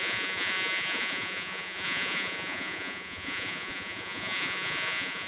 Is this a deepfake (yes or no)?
yes